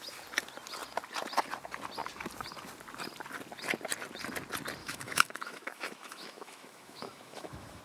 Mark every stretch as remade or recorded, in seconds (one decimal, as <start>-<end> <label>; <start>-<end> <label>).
0.0-4.8 recorded; 4.8-7.8 remade